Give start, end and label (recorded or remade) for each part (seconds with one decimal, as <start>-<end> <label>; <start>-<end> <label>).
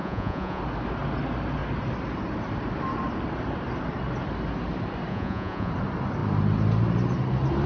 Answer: 0.0-0.6 remade; 0.6-5.1 recorded; 5.1-5.7 remade; 5.7-7.7 recorded